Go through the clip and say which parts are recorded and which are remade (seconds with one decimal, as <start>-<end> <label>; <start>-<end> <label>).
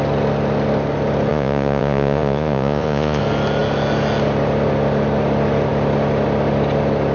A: 0.0-1.3 recorded; 1.3-3.2 remade; 3.2-7.1 recorded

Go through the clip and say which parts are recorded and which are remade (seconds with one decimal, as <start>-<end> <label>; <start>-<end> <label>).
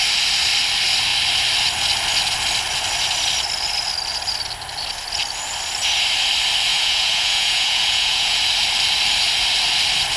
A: 0.0-6.7 recorded; 6.7-8.4 remade; 8.4-10.2 recorded